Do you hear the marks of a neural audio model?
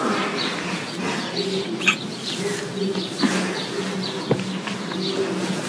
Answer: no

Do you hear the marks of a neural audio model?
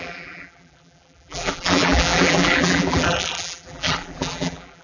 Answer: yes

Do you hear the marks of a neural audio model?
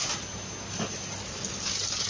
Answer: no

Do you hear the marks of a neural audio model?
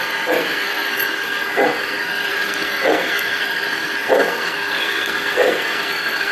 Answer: yes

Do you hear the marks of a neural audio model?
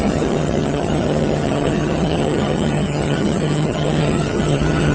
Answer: yes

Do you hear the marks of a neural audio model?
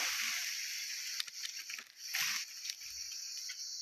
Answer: no